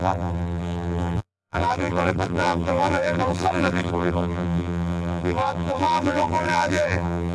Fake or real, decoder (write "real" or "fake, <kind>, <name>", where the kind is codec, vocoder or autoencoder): fake, vocoder, BigVGAN v2